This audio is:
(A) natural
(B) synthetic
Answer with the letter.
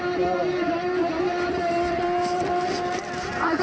A